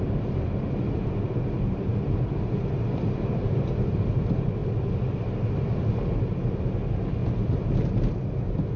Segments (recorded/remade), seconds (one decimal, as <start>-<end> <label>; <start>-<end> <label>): 0.0-8.8 recorded

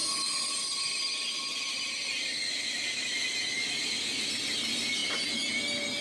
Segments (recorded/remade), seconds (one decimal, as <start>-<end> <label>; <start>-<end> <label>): 0.0-6.0 recorded